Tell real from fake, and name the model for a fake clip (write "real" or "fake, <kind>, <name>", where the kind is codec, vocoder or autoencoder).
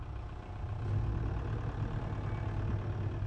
real